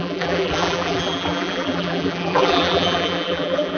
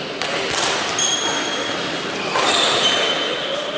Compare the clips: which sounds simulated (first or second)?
first